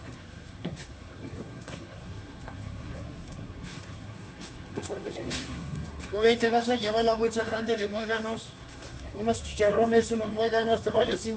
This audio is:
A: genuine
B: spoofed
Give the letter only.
B